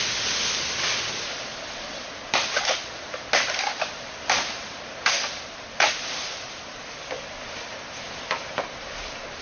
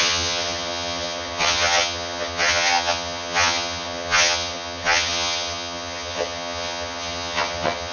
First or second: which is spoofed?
second